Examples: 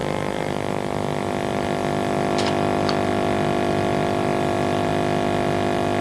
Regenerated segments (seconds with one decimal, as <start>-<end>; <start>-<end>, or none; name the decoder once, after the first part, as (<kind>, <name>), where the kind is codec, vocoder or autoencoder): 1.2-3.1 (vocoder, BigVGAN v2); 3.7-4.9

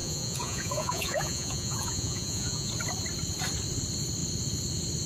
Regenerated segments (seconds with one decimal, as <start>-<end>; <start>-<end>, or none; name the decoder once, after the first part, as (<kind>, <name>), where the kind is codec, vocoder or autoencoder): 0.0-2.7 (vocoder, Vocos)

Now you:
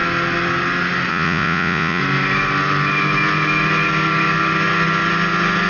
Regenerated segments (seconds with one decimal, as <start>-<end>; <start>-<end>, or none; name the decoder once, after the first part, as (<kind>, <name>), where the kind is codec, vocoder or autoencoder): 1.1-2.0 (vocoder, Vocos)

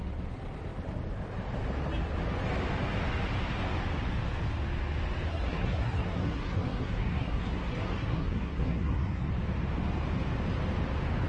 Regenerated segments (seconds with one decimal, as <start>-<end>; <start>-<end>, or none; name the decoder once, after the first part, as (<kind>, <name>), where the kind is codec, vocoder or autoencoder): 5.3-9.3 (codec, SNAC)

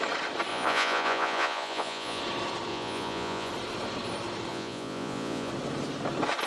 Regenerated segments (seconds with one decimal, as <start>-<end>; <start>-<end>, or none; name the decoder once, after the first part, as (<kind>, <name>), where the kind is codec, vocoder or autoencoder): 0.5-2.2 (vocoder, Vocos); 2.7-3.5; 4.5-5.5

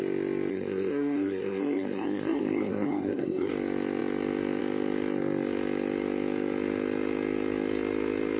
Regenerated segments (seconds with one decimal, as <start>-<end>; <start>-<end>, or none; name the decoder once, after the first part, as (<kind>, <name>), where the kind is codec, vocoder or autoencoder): 0.5-3.5 (codec, SNAC)

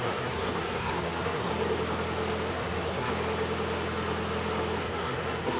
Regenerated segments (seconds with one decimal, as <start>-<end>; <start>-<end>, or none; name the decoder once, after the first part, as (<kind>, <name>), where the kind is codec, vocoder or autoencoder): 0.0-1.5 (codec, SNAC); 2.5-3.1; 4.8-5.6